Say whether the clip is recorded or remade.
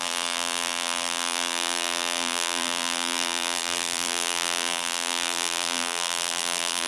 remade